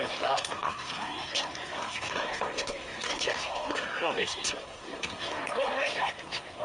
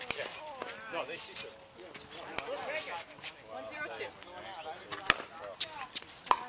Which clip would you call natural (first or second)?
second